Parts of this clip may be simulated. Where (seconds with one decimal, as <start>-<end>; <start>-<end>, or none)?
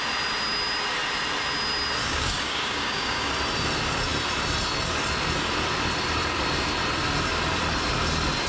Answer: 2.0-3.3